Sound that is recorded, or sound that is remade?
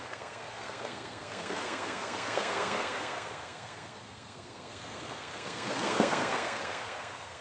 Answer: remade